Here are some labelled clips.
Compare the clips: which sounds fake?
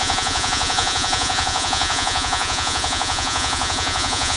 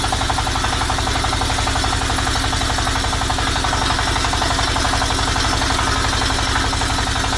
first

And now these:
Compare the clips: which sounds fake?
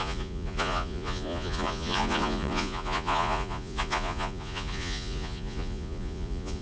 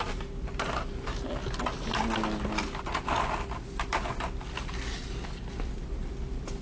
first